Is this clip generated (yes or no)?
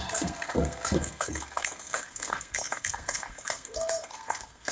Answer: yes